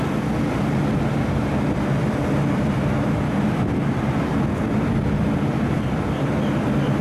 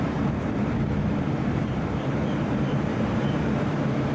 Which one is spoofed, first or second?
second